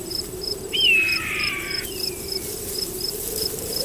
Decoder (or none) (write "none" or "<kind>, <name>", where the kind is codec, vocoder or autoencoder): vocoder, BigVGAN v2